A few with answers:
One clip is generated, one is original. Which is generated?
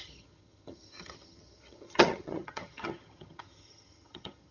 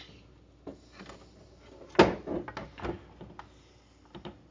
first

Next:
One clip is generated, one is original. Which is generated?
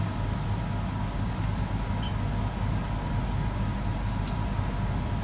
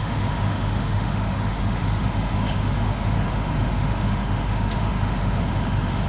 second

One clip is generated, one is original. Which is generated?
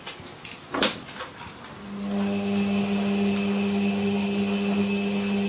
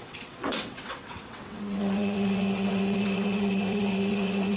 second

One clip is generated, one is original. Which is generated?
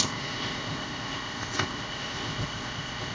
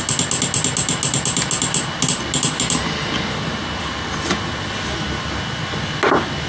first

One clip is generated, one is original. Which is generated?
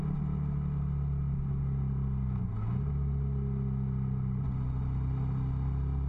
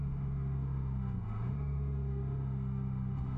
second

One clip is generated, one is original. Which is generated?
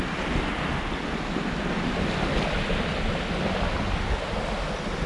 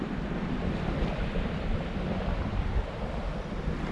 second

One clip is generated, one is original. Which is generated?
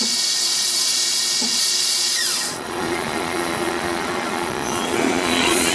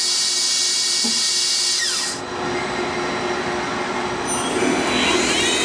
first